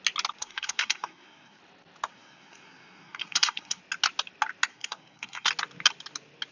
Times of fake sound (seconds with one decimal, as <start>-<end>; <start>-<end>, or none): 0.4-1.6; 2.1-3.8; 4.7-5.5